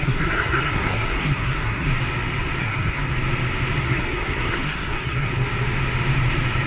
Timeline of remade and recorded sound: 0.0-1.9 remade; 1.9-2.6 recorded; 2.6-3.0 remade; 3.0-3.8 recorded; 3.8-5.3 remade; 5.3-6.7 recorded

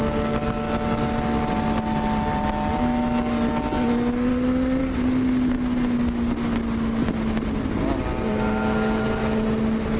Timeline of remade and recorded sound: 0.0-10.0 recorded

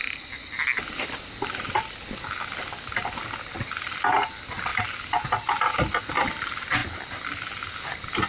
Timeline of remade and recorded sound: 0.0-8.3 recorded

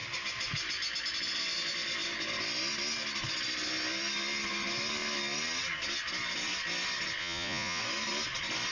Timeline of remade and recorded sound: 0.0-7.2 recorded; 7.2-7.8 remade; 7.8-8.7 recorded